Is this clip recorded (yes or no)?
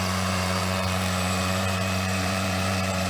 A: no